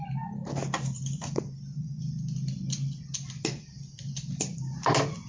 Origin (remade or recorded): recorded